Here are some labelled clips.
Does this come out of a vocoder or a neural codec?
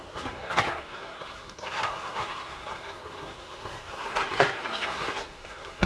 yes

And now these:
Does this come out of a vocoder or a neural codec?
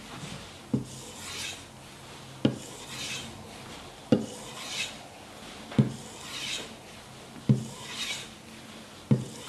no